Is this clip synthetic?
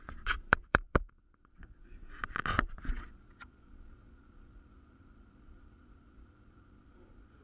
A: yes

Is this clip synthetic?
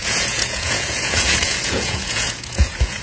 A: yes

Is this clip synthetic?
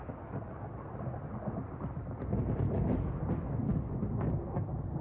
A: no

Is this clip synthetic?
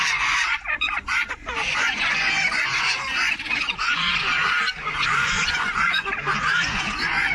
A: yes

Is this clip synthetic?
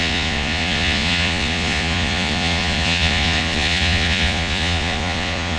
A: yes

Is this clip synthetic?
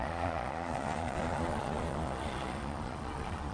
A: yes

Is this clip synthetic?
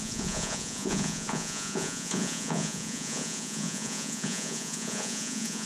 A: yes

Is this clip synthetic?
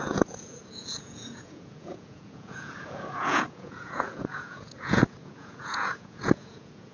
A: yes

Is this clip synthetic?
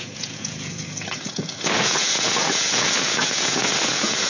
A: yes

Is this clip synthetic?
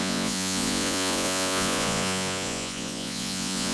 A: yes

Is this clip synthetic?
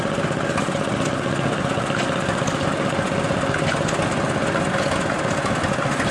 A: no